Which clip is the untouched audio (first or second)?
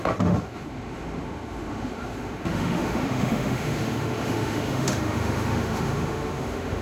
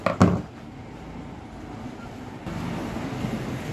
second